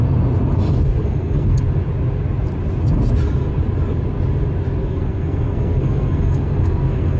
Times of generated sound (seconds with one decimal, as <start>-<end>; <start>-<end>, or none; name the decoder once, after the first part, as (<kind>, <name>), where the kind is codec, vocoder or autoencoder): 1.0-1.6 (codec, SNAC); 4.8-7.2